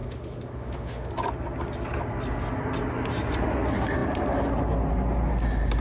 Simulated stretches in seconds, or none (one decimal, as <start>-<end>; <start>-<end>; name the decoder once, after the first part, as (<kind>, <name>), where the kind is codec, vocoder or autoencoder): 0.0-1.1 (autoencoder, DAC-VAE)

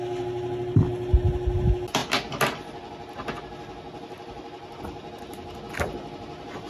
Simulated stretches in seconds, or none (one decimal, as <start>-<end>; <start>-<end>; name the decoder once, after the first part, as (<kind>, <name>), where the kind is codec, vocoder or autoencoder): none